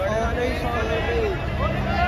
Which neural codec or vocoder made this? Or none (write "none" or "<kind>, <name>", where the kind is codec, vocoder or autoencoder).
none